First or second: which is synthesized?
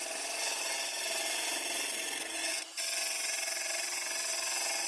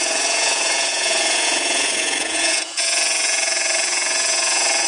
second